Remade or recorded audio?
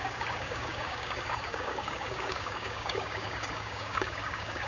remade